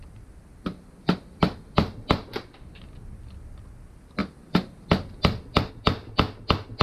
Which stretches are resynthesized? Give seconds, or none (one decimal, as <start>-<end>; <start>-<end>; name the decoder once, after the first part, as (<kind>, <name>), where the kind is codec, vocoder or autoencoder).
none